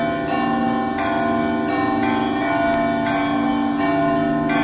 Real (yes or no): yes